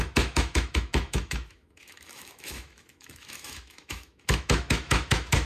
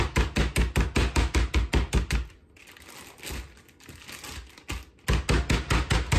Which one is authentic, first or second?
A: second